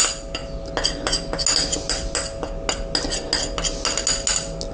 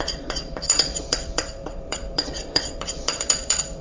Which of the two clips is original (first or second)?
first